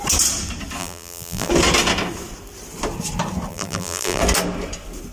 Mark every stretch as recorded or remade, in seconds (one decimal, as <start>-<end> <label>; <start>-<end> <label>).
0.0-0.8 recorded; 0.8-1.5 remade; 1.5-3.5 recorded; 3.5-4.2 remade; 4.2-5.1 recorded